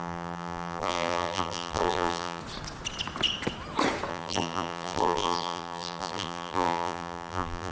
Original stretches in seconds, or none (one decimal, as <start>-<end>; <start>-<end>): 2.4-4.1